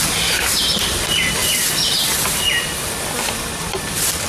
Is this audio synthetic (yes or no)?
no